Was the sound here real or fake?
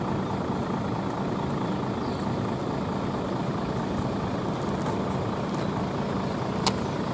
real